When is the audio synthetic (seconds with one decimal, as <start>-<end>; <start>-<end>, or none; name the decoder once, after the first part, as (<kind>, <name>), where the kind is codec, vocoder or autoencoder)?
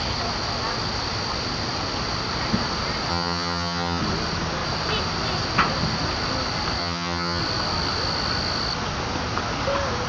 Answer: 3.1-4.0 (vocoder, HiFi-GAN); 6.8-7.4